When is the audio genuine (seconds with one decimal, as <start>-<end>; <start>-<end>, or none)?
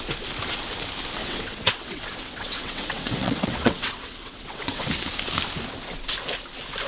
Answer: 0.0-1.2; 4.9-6.9